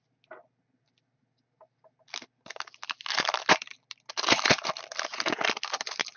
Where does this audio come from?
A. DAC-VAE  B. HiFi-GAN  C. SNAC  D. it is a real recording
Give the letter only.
D